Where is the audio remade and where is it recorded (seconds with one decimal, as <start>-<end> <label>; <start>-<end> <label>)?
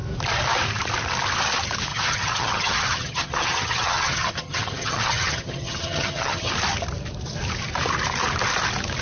0.0-1.9 recorded; 1.9-6.5 remade; 6.5-9.0 recorded